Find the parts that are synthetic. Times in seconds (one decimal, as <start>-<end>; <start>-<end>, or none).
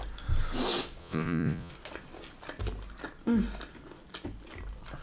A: 1.0-1.7